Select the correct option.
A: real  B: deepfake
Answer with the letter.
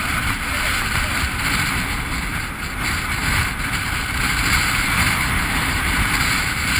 B